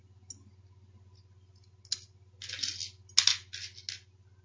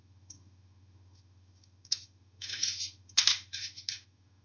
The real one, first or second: first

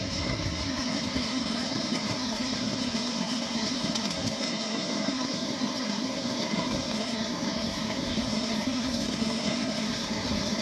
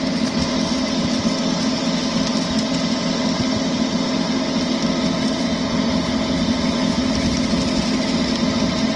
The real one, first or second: second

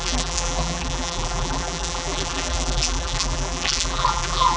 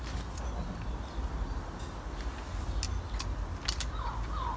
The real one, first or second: second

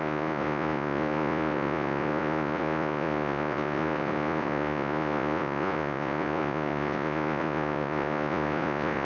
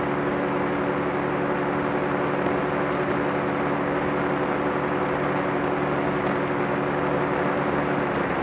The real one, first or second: second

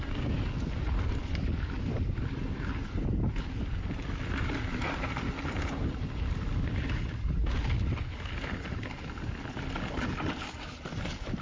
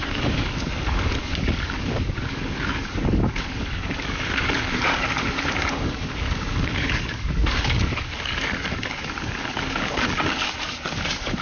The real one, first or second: first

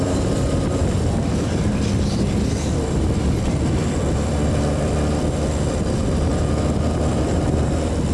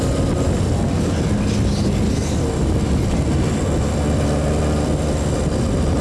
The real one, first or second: second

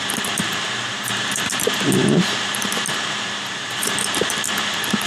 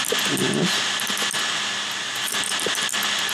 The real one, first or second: second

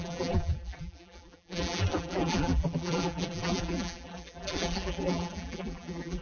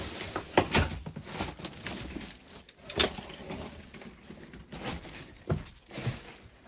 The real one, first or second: second